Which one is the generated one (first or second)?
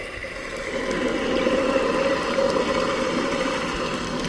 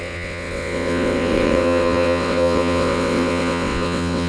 second